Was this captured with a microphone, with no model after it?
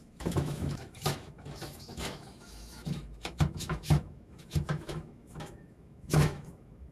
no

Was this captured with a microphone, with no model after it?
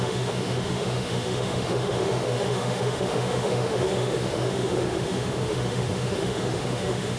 no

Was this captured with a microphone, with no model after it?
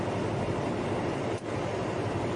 yes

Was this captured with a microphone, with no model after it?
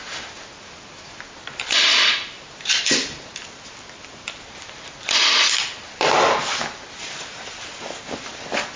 yes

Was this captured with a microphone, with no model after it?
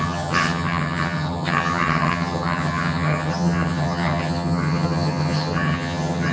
no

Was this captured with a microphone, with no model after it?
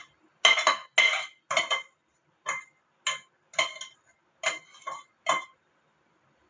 yes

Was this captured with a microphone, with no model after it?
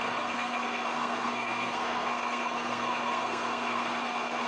no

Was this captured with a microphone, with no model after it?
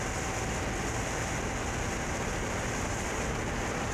yes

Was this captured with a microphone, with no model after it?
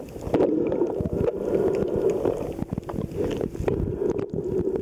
yes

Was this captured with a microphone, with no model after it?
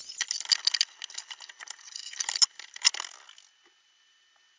yes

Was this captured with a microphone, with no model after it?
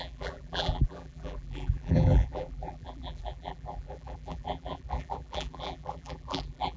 no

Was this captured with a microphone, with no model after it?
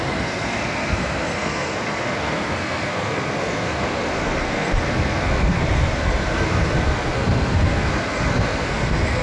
no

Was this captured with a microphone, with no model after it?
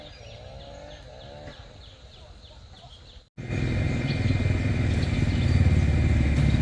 yes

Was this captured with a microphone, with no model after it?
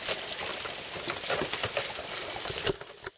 yes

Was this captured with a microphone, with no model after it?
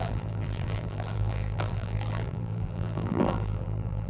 no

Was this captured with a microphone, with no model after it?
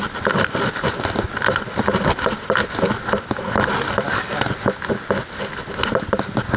yes